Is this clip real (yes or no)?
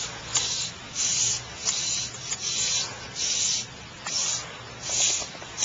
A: yes